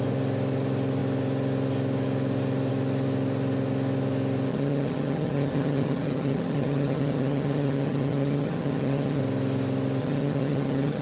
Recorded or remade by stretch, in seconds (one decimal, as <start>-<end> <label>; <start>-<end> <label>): 0.0-4.5 recorded; 4.5-9.2 remade; 9.2-10.0 recorded; 10.0-11.0 remade